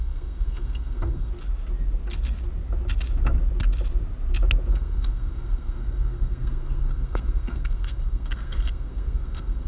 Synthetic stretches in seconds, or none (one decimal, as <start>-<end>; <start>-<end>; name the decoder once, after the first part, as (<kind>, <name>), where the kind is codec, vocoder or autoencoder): 0.0-1.3 (codec, SNAC); 4.7-9.7